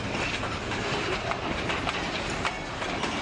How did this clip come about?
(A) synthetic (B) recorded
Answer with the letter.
B